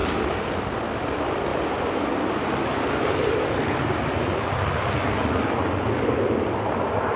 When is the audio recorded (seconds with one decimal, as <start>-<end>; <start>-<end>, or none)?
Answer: 0.0-7.2